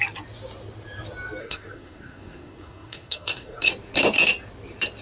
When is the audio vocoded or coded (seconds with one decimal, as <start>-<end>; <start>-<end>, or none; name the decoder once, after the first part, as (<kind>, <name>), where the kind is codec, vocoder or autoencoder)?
1.4-3.7 (codec, SNAC)